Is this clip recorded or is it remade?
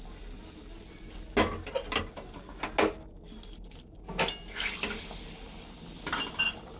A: recorded